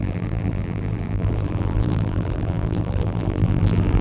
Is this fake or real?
fake